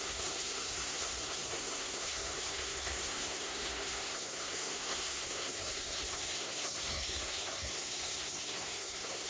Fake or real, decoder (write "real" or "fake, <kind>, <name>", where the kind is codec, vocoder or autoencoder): fake, codec, SNAC